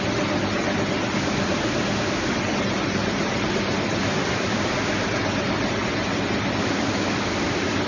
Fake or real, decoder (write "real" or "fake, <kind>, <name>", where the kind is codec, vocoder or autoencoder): real